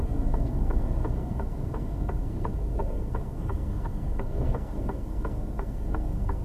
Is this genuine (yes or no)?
no